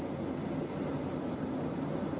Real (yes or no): yes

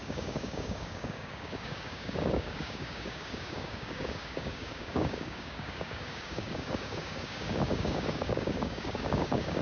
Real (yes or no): no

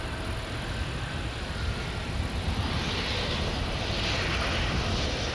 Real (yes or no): yes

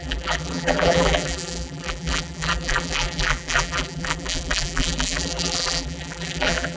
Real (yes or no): no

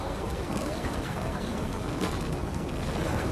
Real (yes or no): no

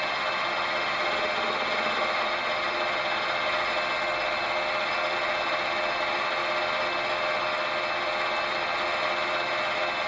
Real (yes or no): yes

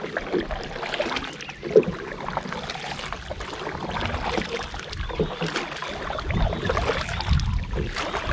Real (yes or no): yes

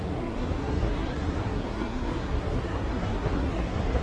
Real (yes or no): no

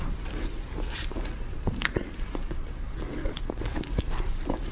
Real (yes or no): yes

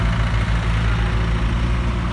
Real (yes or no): yes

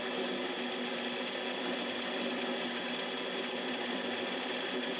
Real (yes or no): yes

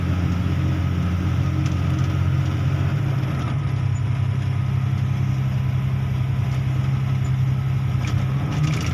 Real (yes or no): yes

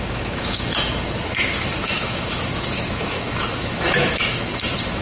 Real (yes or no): no